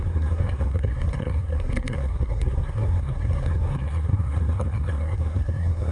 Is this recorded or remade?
remade